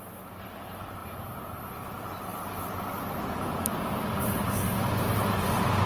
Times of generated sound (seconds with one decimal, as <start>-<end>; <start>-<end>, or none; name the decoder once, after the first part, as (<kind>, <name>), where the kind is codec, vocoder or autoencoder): 0.0-2.3 (vocoder, BigVGAN v2); 4.2-5.9